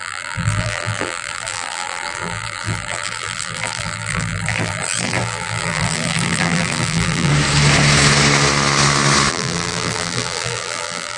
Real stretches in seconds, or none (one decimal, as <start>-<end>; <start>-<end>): 7.3-9.3